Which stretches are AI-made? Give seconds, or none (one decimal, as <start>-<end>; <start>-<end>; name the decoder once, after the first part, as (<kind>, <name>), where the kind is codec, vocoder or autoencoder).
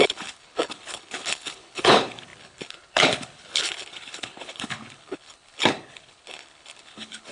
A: 0.0-7.3 (codec, HILCodec)